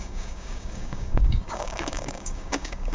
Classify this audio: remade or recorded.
remade